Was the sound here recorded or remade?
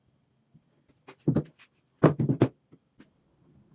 recorded